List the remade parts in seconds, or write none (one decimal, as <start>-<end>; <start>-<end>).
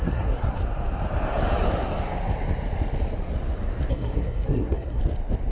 0.0-0.6; 3.9-5.0